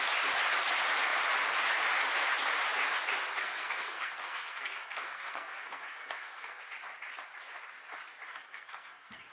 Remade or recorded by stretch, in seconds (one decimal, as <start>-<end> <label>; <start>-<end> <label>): 0.0-3.4 recorded; 3.4-6.6 remade; 6.6-8.3 recorded; 8.3-9.3 remade